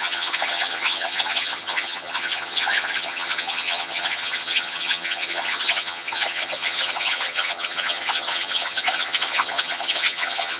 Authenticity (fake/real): fake